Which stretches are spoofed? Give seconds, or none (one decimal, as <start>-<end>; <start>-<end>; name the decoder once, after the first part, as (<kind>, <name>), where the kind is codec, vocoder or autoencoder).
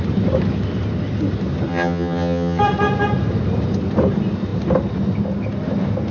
1.7-2.6 (vocoder, HiFi-GAN)